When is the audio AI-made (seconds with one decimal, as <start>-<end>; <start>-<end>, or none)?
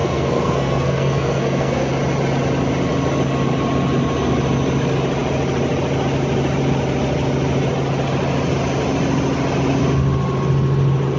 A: 0.0-1.9